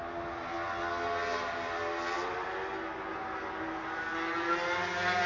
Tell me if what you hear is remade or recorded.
recorded